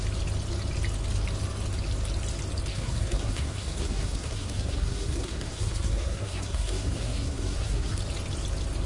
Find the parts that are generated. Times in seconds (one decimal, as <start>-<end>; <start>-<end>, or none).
2.7-8.0

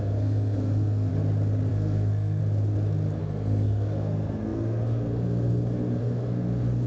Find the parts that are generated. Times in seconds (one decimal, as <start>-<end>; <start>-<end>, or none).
0.0-1.1; 1.7-2.4; 3.2-6.9

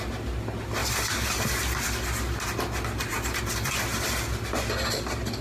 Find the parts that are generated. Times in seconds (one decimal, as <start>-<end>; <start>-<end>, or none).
none

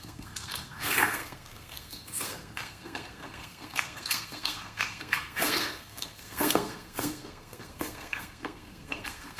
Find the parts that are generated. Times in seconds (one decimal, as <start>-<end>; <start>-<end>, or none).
0.0-9.4

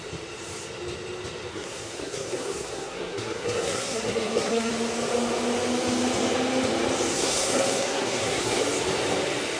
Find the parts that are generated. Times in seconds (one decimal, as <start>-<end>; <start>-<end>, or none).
1.5-4.7; 7.1-8.6

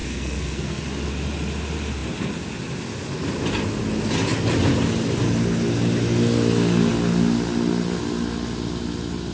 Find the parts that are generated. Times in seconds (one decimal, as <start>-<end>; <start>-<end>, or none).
0.0-0.8

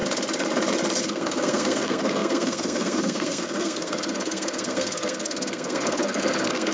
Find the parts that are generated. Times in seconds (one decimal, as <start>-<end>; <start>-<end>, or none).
1.0-6.7

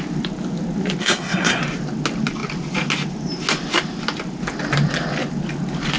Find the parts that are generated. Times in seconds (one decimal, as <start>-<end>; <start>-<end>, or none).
1.0-1.6